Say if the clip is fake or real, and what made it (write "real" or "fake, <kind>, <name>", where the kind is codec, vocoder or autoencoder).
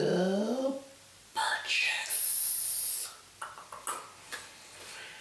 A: real